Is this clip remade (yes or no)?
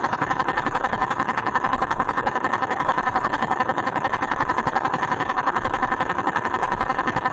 yes